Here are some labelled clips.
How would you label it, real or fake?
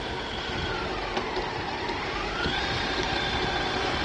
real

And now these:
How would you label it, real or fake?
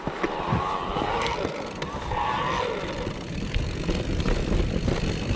real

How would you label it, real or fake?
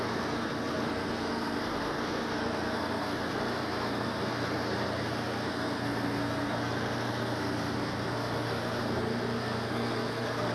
fake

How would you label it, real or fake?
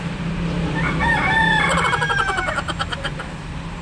real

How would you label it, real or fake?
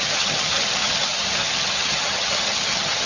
fake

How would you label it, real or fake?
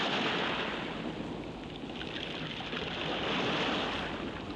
real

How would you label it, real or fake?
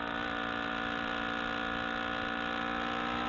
real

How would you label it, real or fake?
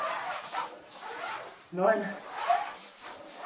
fake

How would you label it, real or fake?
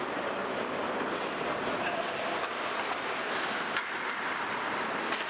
real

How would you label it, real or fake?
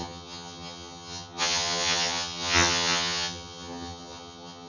fake